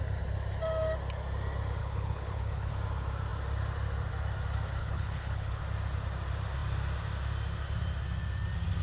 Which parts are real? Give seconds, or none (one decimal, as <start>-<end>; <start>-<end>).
0.0-1.8; 2.7-4.8; 5.6-8.8